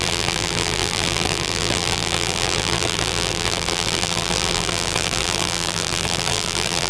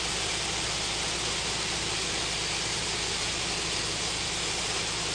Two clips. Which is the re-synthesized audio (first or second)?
first